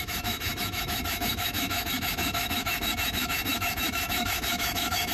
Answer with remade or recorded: remade